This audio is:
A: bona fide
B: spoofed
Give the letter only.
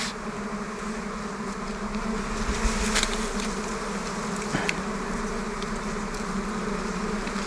A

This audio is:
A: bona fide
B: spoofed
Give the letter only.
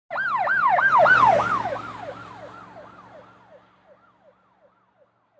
A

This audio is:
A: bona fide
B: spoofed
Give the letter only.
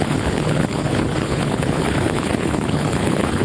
B